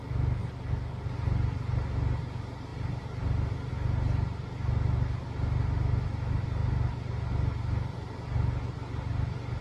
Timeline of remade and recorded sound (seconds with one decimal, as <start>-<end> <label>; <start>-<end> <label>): 0.0-9.6 recorded